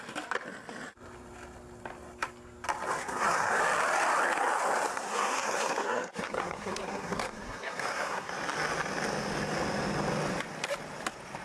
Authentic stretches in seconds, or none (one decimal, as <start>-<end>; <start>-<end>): 0.0-3.0; 3.6-4.9; 8.3-11.4